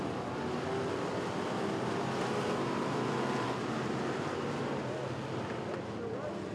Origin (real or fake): real